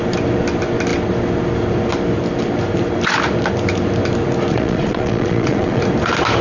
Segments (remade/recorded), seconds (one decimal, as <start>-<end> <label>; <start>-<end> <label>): 0.0-4.5 recorded; 4.5-5.8 remade; 5.8-6.4 recorded